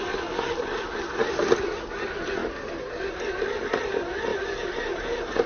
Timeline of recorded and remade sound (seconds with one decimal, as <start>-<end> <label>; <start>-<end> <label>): 0.0-2.4 recorded; 2.4-3.0 remade; 3.0-4.3 recorded; 4.3-5.5 remade